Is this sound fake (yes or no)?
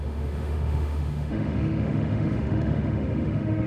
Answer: yes